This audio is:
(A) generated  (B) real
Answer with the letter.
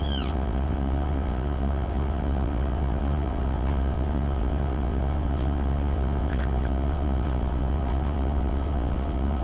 A